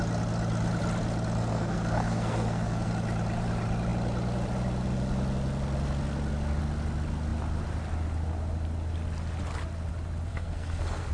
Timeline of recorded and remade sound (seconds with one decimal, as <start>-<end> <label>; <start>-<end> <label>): 0.0-1.4 recorded; 1.4-2.9 remade; 2.9-10.3 recorded; 10.3-11.1 remade